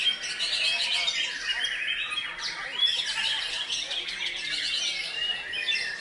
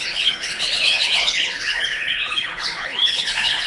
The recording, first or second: first